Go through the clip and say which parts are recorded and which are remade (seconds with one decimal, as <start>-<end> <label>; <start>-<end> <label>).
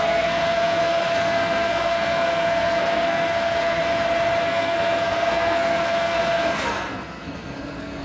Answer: 0.0-3.8 remade; 3.8-4.4 recorded; 4.4-8.0 remade